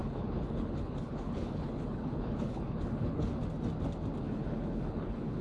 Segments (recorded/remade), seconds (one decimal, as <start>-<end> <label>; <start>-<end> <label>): 0.0-3.4 remade; 3.4-4.2 recorded; 4.2-5.4 remade